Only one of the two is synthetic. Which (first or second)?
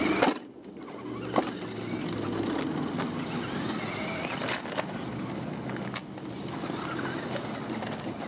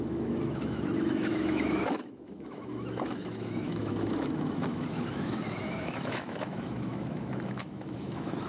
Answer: second